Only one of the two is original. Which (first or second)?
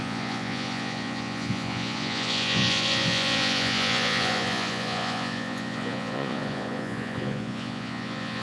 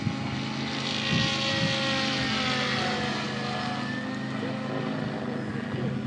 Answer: second